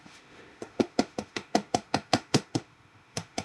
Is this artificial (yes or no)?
yes